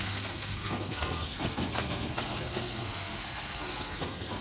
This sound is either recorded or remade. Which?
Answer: remade